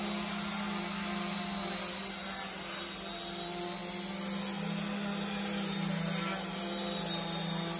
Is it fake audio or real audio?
real